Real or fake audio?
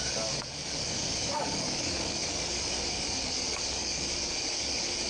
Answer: fake